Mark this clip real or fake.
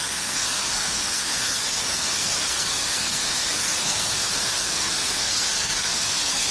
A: fake